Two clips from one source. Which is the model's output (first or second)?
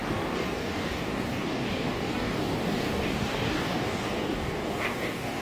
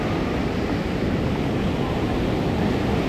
first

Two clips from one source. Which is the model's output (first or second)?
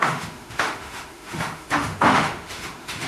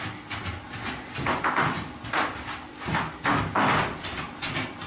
first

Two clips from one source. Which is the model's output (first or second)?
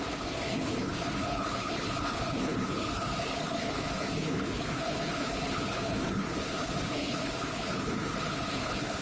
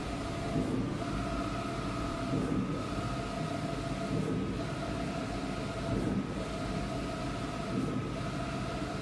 first